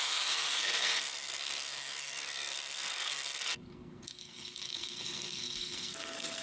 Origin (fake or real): fake